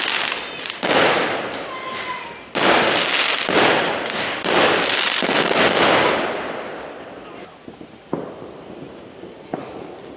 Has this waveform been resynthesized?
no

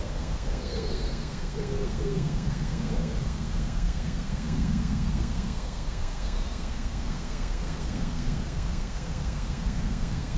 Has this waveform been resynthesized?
yes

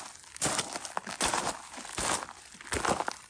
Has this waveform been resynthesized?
no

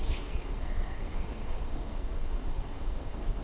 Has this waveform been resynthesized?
yes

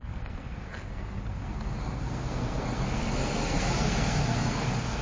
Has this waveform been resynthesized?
yes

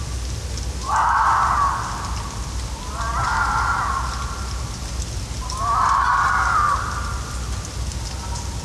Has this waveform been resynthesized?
no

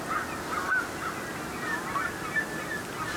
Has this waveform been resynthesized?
no